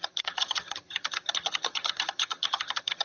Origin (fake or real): fake